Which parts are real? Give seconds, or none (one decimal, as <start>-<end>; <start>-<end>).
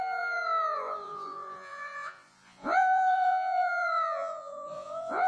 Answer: none